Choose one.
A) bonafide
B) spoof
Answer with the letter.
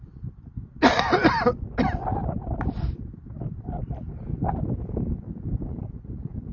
A